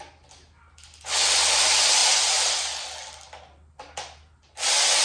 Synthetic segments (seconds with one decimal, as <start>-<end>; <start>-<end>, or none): none